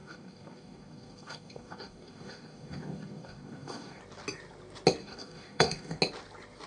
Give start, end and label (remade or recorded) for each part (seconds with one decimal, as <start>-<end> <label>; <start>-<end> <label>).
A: 0.0-4.0 remade; 4.0-5.0 recorded; 5.0-6.0 remade; 6.0-6.7 recorded